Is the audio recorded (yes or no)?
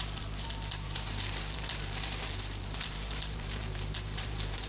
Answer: no